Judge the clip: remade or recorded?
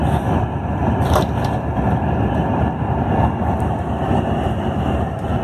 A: recorded